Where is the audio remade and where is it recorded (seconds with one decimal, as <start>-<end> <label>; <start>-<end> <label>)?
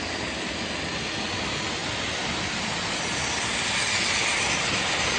0.0-5.2 recorded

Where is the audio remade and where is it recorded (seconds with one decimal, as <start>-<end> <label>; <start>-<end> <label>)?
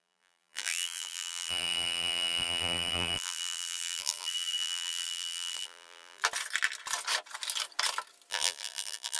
0.0-6.2 remade; 6.2-8.3 recorded; 8.3-9.2 remade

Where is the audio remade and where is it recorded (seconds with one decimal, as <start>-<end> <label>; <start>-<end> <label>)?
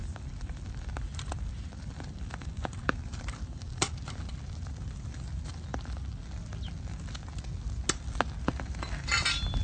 0.0-4.3 remade; 4.3-8.4 recorded; 8.4-9.6 remade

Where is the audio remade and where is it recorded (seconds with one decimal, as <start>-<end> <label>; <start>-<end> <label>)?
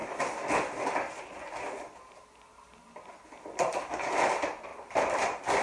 0.0-4.7 recorded; 4.7-5.6 remade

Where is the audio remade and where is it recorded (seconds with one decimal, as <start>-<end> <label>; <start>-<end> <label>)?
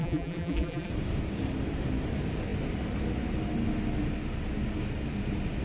0.0-0.9 remade; 0.9-5.6 recorded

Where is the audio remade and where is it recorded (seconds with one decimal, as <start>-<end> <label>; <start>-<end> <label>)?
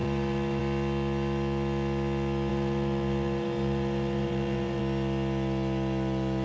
0.0-0.6 remade; 0.6-2.5 recorded; 2.5-4.8 remade; 4.8-6.4 recorded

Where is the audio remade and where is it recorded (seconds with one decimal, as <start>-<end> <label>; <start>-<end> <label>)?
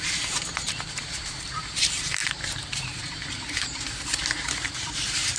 0.0-5.4 remade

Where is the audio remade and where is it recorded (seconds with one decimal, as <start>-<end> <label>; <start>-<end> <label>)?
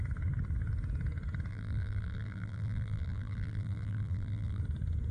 0.0-1.5 recorded; 1.5-4.6 remade; 4.6-5.1 recorded